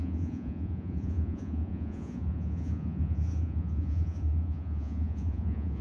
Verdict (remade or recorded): remade